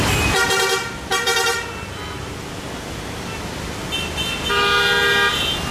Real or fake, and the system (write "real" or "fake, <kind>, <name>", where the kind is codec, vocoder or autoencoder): real